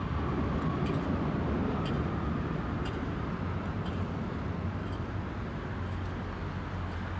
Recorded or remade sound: recorded